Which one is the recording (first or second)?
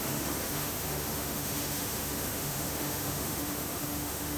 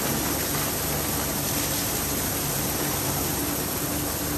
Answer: second